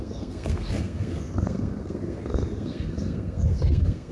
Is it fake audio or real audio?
fake